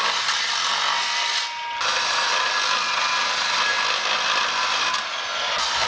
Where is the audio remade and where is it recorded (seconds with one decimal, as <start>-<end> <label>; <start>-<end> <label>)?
0.0-5.9 recorded